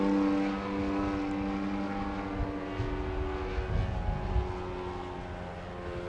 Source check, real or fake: real